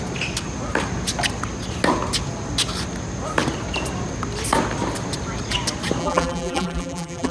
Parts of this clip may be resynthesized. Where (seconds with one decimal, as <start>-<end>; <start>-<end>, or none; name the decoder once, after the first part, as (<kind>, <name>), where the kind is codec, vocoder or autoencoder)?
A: 6.0-7.3 (vocoder, BigVGAN v2)